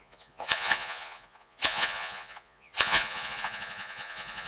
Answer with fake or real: fake